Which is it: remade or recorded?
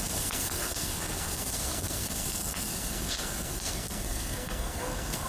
remade